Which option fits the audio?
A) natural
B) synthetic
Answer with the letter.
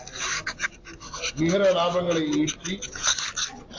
A